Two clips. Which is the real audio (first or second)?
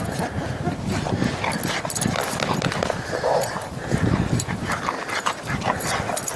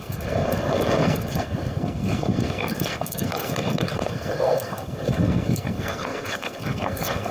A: first